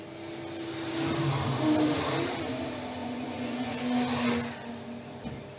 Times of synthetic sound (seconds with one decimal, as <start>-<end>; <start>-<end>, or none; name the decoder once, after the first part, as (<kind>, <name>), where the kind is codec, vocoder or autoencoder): 3.0-3.8 (vocoder, Vocos)